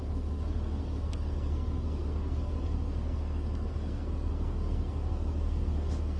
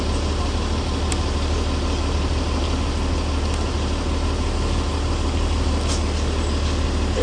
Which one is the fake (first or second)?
first